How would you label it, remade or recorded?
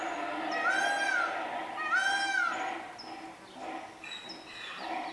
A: recorded